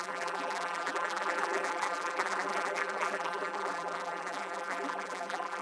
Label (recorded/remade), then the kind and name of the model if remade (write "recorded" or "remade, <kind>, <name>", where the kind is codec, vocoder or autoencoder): remade, vocoder, BigVGAN v2